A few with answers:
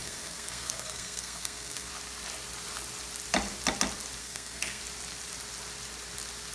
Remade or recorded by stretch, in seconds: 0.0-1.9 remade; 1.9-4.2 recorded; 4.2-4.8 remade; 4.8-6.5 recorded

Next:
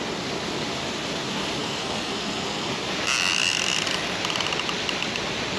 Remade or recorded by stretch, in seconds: 0.0-1.6 recorded; 1.6-2.7 remade; 2.7-5.6 recorded

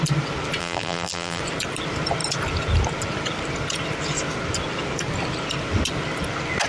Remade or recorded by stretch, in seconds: 0.0-0.6 recorded; 0.6-1.4 remade; 1.4-6.7 recorded

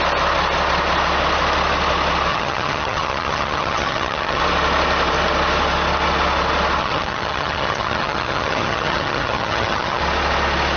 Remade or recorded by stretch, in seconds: 0.0-2.3 recorded; 2.3-4.4 remade; 4.4-6.8 recorded; 6.8-10.0 remade; 10.0-10.8 recorded

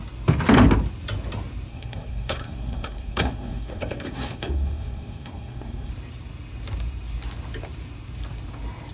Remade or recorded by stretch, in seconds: 0.0-1.7 recorded; 1.7-5.9 remade; 5.9-8.9 recorded

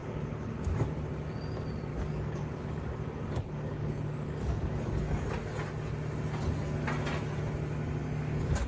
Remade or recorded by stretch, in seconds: 0.0-0.6 remade; 0.6-1.9 recorded; 1.9-5.3 remade; 5.3-8.0 recorded; 8.0-8.7 remade